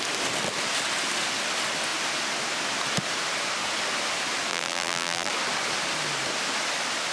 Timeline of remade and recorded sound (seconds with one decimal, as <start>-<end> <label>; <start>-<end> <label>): 0.0-4.5 recorded; 4.5-5.3 remade; 5.3-7.1 recorded